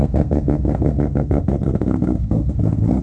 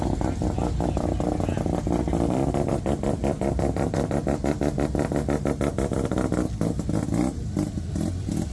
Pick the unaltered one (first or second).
second